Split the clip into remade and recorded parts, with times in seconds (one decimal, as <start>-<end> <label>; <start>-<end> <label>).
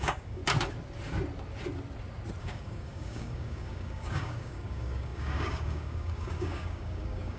0.0-0.4 remade; 0.4-2.4 recorded; 2.4-7.4 remade